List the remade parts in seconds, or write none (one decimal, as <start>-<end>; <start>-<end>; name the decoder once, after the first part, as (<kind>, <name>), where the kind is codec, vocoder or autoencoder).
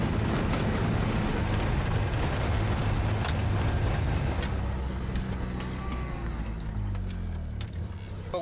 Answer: none